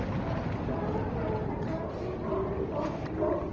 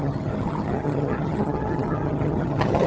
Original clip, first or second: first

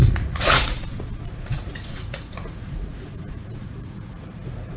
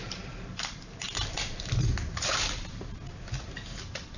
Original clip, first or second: second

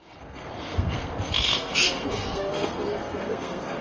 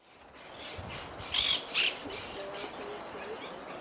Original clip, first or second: second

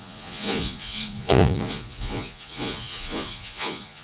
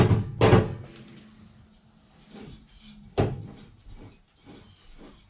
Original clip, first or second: second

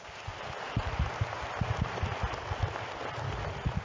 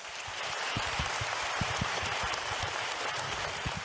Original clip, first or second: first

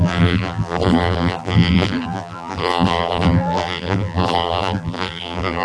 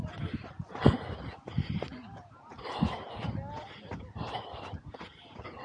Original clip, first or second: second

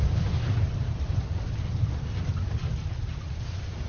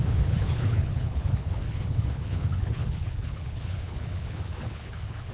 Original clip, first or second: first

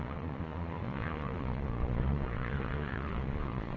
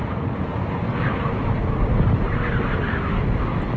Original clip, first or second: second